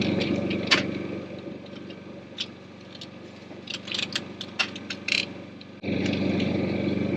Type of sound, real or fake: real